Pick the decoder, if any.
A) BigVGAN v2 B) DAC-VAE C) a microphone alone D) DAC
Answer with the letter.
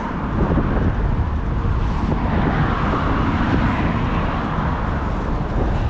C